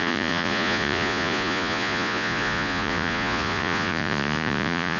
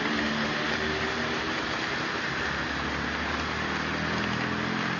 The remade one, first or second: first